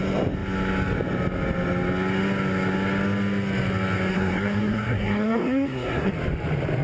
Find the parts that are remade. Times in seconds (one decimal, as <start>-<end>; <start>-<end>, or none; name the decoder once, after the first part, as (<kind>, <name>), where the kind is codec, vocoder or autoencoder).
4.1-6.1 (codec, SNAC)